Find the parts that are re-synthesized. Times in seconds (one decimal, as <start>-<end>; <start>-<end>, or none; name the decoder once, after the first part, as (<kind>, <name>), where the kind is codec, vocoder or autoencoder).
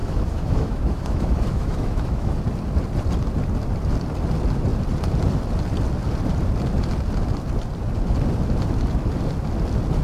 0.0-2.4 (autoencoder, DAC-VAE)